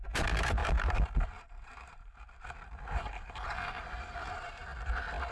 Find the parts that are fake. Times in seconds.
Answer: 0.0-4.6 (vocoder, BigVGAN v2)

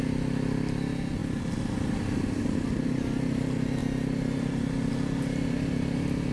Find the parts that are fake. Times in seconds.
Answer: none

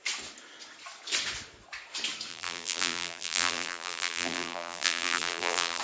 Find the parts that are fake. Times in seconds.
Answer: 2.3-5.8 (vocoder, BigVGAN v2)

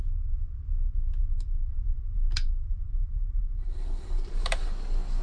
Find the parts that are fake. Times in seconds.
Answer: 1.6-4.7 (vocoder, BigVGAN v2)